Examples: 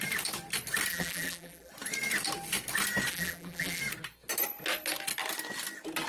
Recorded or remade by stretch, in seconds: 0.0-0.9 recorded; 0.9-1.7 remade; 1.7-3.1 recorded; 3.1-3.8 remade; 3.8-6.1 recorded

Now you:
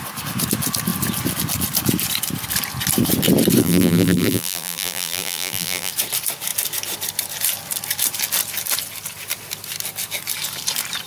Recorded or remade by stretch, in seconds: 0.0-3.6 recorded; 3.6-5.9 remade; 5.9-11.1 recorded

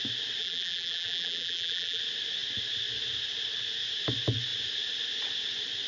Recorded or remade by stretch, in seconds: 0.0-0.4 recorded; 0.4-2.0 remade; 2.0-5.9 recorded

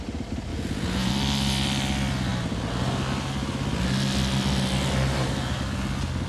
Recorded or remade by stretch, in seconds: 0.0-0.5 recorded; 0.5-1.1 remade; 1.1-6.3 recorded